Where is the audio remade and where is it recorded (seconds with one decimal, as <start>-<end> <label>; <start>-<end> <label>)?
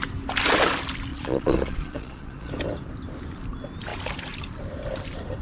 0.0-1.1 recorded; 1.1-2.5 remade; 2.5-5.4 recorded